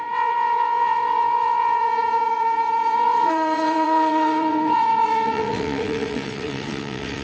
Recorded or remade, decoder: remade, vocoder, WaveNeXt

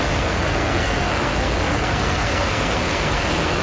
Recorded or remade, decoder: remade, codec, SNAC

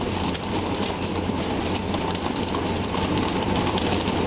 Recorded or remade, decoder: remade, vocoder, BigVGAN v2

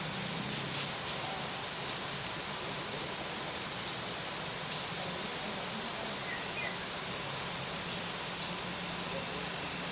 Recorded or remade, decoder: recorded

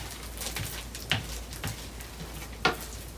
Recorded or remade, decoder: recorded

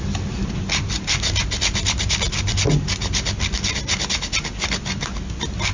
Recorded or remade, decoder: recorded